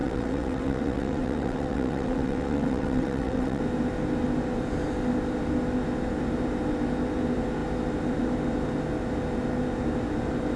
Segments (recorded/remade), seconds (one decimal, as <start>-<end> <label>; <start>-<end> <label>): 0.0-3.6 remade; 3.6-10.6 recorded